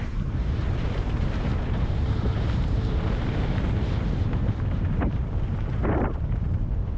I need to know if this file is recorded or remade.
remade